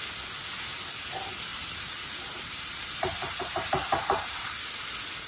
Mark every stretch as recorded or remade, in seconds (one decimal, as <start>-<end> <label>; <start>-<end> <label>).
0.0-1.5 recorded; 1.5-4.7 remade; 4.7-5.3 recorded